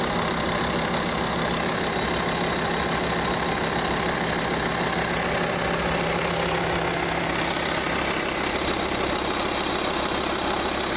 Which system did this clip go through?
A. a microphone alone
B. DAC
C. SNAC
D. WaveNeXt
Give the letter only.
A